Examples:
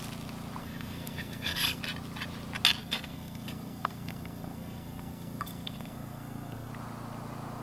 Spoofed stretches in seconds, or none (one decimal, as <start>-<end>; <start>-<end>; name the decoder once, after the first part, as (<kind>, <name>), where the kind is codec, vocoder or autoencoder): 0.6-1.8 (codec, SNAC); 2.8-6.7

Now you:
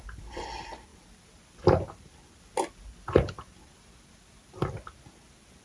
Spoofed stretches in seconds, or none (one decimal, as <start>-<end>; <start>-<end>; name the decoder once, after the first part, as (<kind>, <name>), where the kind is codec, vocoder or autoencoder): none

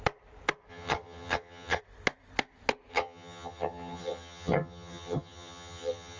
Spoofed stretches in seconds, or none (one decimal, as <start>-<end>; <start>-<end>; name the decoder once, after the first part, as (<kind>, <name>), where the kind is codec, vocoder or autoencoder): 0.7-1.8 (vocoder, HiFi-GAN); 2.9-6.2